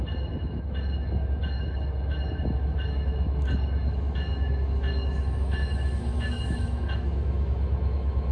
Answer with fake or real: fake